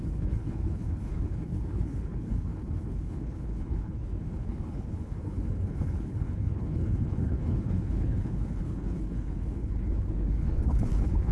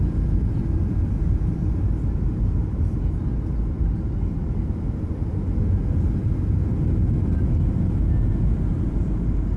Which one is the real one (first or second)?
second